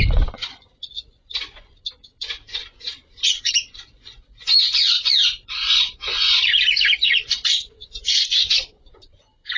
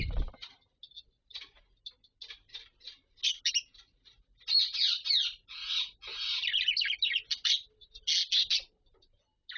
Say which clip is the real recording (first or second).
second